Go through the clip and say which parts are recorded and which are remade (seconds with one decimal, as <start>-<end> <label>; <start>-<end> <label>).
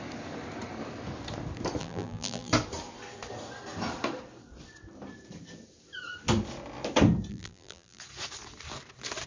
0.0-1.8 recorded; 1.8-2.5 remade; 2.5-7.3 recorded; 7.3-8.0 remade; 8.0-9.3 recorded